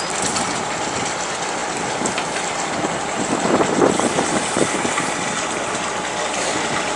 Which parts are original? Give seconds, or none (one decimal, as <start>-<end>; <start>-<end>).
0.0-7.0

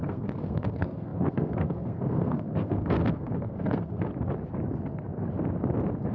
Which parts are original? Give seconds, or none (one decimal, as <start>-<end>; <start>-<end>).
4.1-6.1

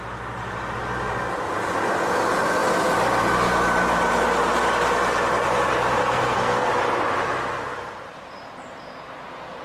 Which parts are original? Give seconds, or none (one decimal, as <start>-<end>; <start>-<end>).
0.0-6.0; 6.7-9.6

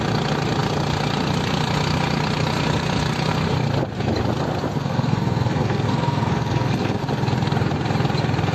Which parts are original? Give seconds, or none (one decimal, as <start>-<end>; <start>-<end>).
0.0-4.8; 7.0-8.5